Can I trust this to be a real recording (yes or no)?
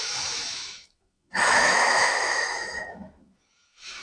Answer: no